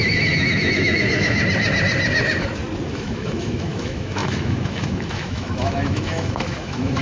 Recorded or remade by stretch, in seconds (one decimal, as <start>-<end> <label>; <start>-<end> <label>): 0.0-1.4 remade; 1.4-2.9 recorded; 2.9-7.0 remade